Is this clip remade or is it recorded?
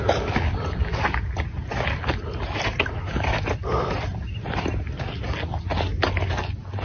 recorded